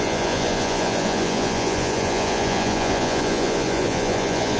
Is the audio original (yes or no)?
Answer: no